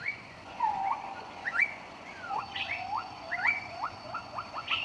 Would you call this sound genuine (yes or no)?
no